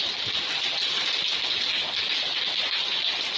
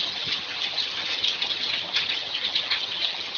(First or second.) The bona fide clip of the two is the first